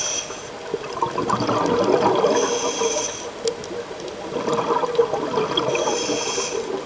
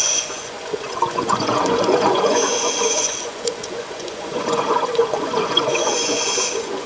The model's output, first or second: second